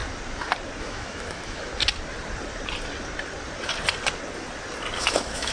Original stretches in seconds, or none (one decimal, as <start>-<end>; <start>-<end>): 0.0-0.8; 1.7-5.0